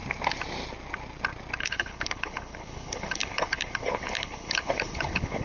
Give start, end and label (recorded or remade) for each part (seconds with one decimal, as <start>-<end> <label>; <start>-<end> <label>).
0.0-1.6 recorded; 1.6-5.4 remade